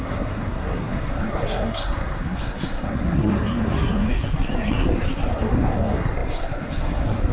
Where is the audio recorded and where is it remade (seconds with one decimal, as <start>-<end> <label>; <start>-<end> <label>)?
0.0-7.3 remade